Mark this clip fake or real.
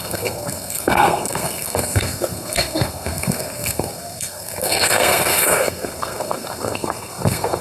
fake